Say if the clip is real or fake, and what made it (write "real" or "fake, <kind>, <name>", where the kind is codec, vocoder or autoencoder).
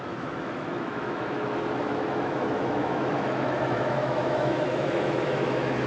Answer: fake, autoencoder, DAC-VAE